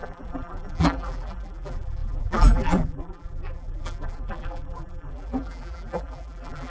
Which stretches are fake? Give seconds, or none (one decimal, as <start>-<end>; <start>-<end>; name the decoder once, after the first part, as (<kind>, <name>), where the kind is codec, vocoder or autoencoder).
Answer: 0.0-6.7 (vocoder, BigVGAN v2)